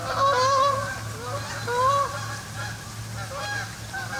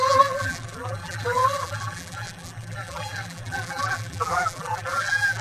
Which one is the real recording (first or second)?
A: first